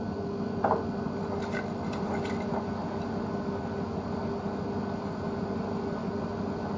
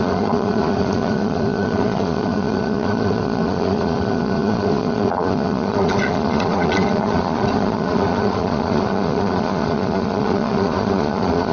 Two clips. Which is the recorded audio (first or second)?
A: first